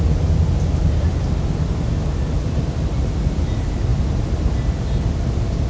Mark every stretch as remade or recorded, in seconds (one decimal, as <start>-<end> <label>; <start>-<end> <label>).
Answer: 0.0-5.7 recorded